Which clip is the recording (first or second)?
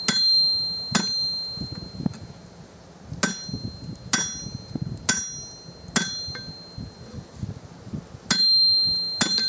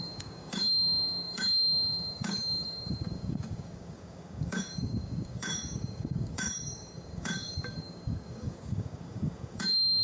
first